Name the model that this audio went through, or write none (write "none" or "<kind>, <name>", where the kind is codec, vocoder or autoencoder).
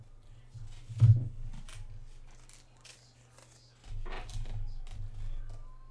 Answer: none